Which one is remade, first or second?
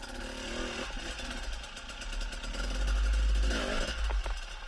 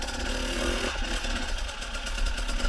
second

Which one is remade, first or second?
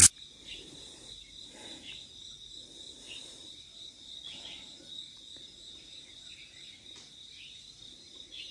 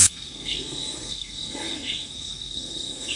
second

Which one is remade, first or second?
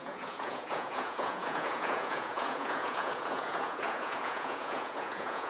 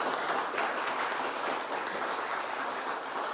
first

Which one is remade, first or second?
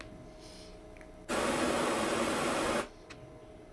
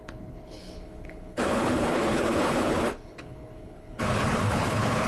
second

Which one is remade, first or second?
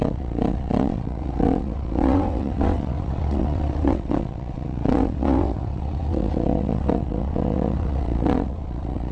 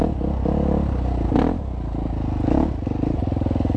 first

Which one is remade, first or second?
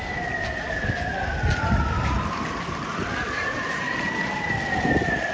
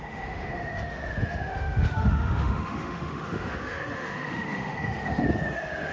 second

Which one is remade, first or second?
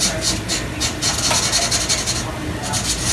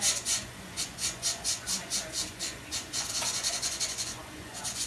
second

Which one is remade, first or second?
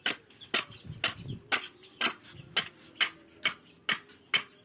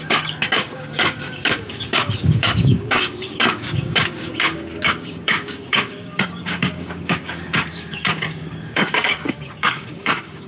second